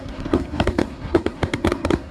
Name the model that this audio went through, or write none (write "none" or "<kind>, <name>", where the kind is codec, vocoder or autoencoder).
codec, SNAC